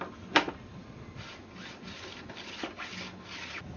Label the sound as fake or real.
real